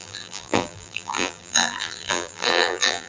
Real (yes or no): no